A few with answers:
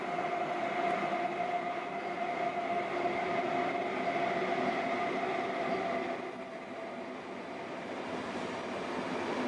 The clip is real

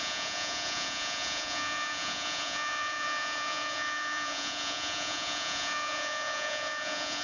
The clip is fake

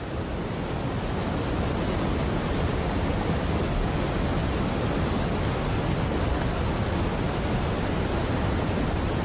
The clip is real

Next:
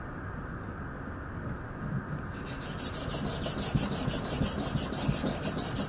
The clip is real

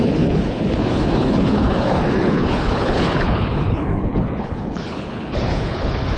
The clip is fake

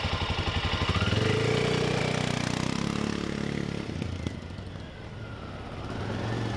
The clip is real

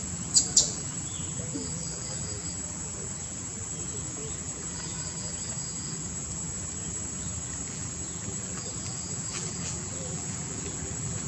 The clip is fake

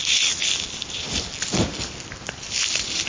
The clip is real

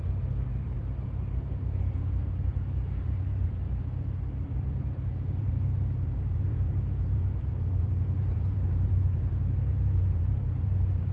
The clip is fake